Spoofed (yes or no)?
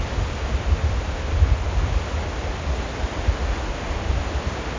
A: no